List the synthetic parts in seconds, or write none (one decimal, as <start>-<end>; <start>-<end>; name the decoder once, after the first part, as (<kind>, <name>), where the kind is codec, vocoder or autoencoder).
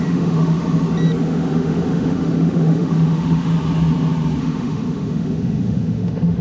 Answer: 0.0-0.6 (autoencoder, DAC-VAE); 1.2-3.5; 4.4-6.4